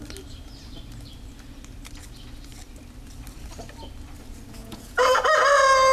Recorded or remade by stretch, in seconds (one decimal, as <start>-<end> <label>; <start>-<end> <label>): 0.0-4.6 recorded; 4.6-5.2 remade; 5.2-5.9 recorded